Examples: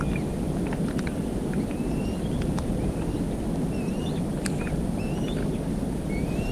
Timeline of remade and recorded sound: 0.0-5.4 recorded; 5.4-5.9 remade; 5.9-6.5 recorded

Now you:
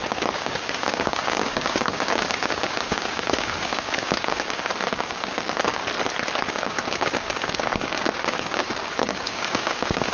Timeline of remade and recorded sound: 0.0-5.8 remade; 5.8-6.5 recorded; 6.5-10.1 remade

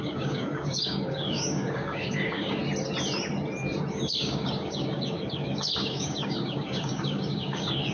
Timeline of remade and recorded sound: 0.0-2.6 remade; 2.6-3.9 recorded; 3.9-7.9 remade

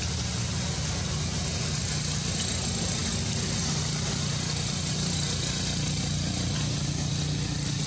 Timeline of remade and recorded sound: 0.0-7.9 recorded

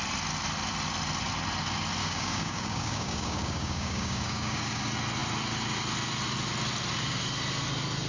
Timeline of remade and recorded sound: 0.0-2.0 recorded; 2.0-4.8 remade; 4.8-8.1 recorded

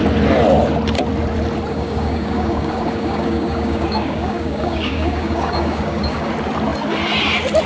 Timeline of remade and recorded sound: 0.0-1.7 recorded; 1.7-6.3 remade; 6.3-7.7 recorded